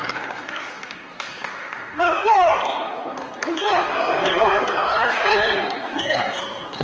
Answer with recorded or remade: remade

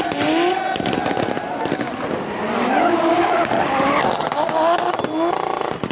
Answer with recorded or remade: recorded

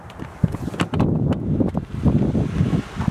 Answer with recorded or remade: recorded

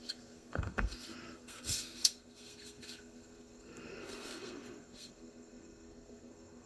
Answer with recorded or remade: remade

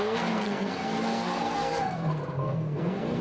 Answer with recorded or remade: remade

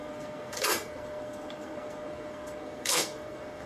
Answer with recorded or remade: remade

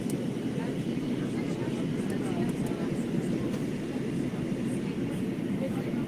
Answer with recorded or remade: recorded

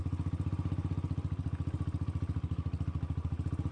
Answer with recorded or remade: recorded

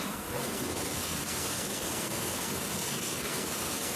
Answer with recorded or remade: remade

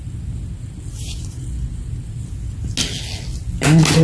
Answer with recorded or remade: recorded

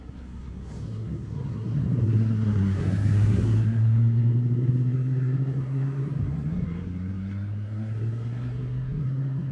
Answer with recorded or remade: remade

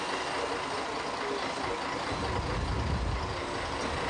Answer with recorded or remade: recorded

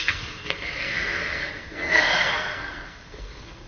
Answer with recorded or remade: remade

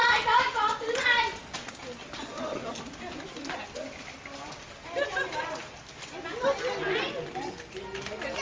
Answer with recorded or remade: recorded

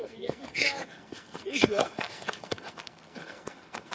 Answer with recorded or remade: remade